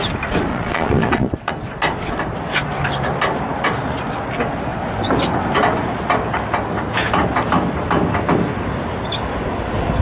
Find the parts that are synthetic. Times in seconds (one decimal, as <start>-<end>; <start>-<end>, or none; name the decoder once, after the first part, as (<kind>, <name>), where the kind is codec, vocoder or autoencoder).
0.5-1.5 (vocoder, Vocos)